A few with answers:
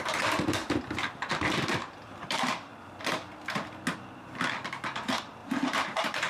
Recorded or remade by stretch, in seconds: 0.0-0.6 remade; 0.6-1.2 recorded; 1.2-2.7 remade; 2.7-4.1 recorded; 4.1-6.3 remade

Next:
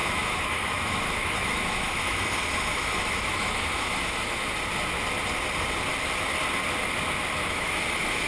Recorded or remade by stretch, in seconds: 0.0-4.2 remade; 4.2-7.4 recorded; 7.4-8.3 remade

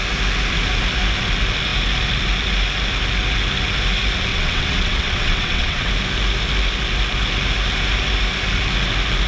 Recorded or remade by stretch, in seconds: 0.0-4.3 recorded; 4.3-5.9 remade; 5.9-9.3 recorded